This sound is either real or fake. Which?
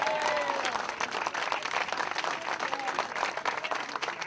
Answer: real